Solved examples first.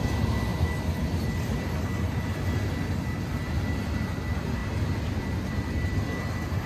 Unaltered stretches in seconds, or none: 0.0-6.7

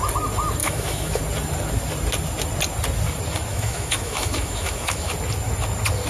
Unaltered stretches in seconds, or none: 0.0-0.6; 1.2-3.5; 5.1-6.1

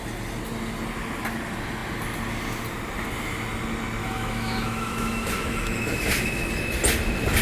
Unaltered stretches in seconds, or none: 0.0-4.0; 6.5-7.4